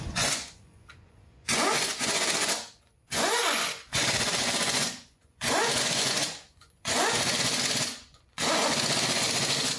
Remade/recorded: remade